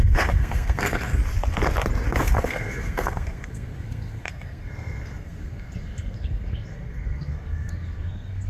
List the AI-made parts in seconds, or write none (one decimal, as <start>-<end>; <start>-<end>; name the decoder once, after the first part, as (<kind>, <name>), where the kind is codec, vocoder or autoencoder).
0.0-1.2 (codec, SNAC); 2.2-8.5